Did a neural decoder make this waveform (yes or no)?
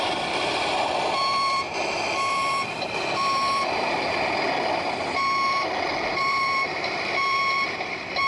yes